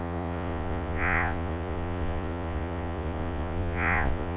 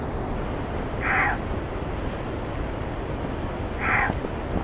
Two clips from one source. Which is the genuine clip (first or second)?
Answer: second